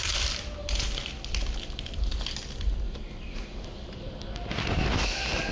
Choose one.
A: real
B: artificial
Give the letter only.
A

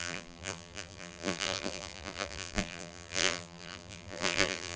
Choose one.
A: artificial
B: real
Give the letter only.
A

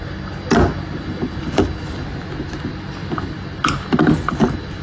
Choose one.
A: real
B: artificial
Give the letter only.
A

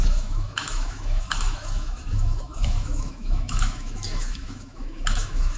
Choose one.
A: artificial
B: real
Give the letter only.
A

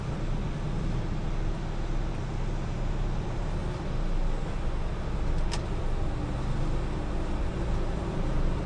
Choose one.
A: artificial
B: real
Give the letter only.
B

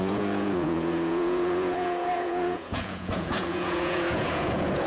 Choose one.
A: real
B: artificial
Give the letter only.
B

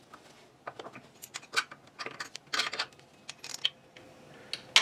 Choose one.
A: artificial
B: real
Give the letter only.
B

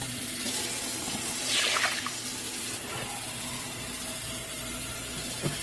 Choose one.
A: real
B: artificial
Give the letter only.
A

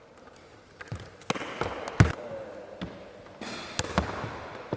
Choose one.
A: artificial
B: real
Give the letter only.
B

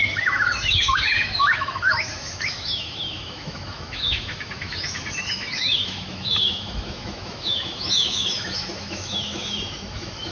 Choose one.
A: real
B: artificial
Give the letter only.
B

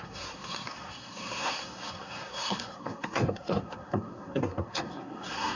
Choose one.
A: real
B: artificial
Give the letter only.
B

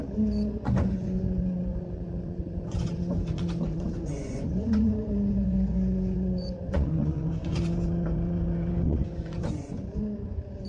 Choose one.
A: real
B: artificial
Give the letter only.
B